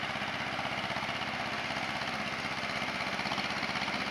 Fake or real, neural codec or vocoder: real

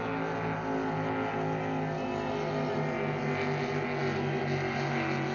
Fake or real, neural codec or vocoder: real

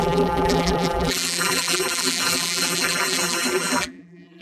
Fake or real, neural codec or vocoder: fake, vocoder, BigVGAN v2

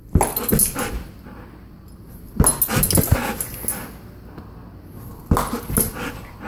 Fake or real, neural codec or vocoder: real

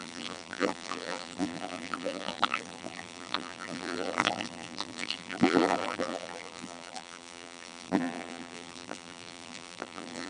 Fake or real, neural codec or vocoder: fake, vocoder, BigVGAN v2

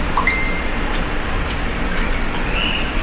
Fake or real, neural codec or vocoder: fake, vocoder, BigVGAN v2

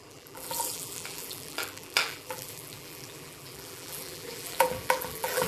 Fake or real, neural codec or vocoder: fake, vocoder, BigVGAN v2